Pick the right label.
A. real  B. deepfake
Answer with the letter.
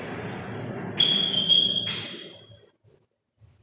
A